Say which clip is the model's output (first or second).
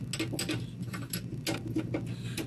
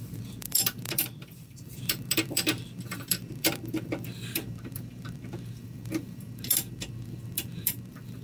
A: second